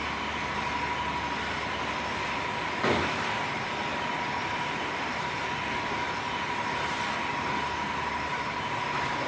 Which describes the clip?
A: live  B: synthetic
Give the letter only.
B